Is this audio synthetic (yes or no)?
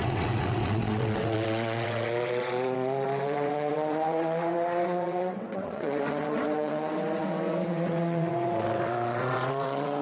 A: yes